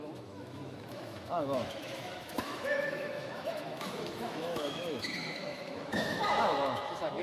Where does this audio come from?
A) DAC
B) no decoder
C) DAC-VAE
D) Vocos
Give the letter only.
C